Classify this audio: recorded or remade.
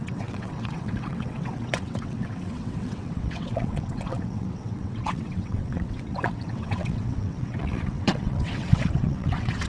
remade